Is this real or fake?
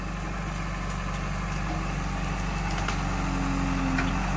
real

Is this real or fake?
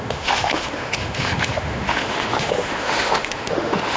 fake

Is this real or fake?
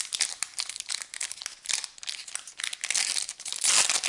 real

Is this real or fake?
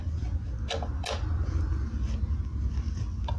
real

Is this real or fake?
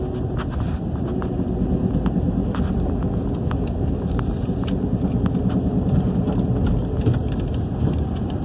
real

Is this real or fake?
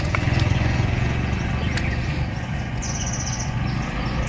fake